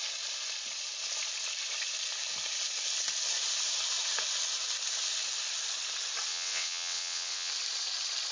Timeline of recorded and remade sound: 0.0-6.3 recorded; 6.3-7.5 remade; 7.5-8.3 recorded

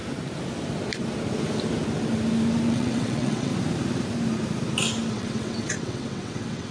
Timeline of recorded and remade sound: 0.0-2.7 recorded; 2.7-3.5 remade; 3.5-5.1 recorded; 5.1-6.7 remade

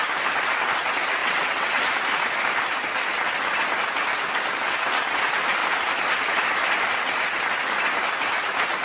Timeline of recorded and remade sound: 0.0-1.2 recorded; 1.2-1.8 remade; 1.8-8.8 recorded

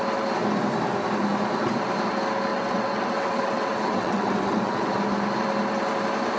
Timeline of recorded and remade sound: 0.0-2.5 recorded; 2.5-4.9 remade; 4.9-6.4 recorded

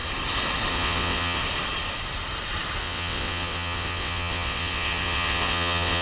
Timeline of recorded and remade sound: 0.0-0.7 recorded; 0.7-1.4 remade; 1.4-2.8 recorded; 2.8-6.0 remade